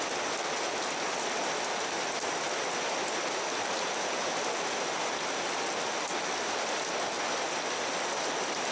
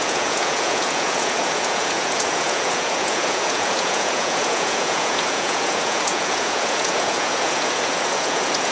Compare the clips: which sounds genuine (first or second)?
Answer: first